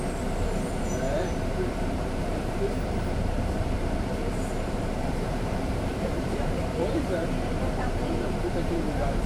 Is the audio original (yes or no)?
no